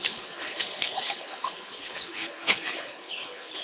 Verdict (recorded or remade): remade